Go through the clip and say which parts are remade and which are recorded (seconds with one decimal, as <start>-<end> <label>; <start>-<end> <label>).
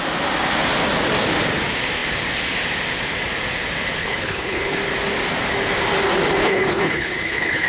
0.0-4.0 recorded; 4.0-4.8 remade; 4.8-6.4 recorded; 6.4-7.7 remade